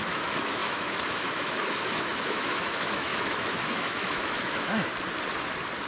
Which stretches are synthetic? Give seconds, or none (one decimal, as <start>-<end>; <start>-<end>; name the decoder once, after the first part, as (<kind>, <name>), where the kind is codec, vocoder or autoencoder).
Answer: 0.0-4.9 (autoencoder, DAC-VAE)